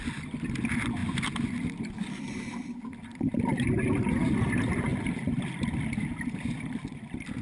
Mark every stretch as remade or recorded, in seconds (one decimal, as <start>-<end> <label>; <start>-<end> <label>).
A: 0.0-7.4 recorded